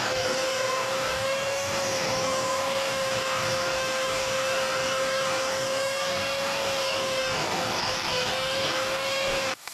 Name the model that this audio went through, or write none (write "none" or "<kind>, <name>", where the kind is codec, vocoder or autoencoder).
codec, DAC